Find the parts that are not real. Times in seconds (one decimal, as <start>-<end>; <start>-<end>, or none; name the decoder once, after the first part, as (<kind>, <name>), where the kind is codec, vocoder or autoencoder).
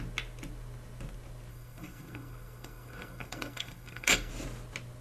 1.5-4.3 (codec, SNAC)